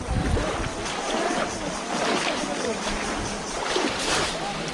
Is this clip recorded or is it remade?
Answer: recorded